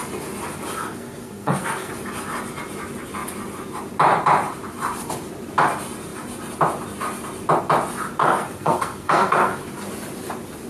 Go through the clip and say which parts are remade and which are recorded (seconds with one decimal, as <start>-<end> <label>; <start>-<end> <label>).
0.0-0.8 recorded; 0.8-1.9 remade; 1.9-8.2 recorded; 8.2-9.6 remade; 9.6-10.7 recorded